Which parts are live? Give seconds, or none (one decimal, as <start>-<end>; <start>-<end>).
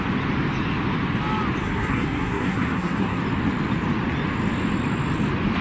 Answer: 0.0-1.6; 3.2-5.6